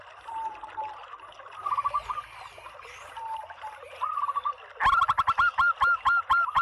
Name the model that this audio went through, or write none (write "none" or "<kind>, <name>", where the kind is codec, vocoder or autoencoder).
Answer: none